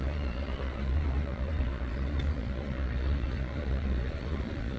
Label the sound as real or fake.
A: fake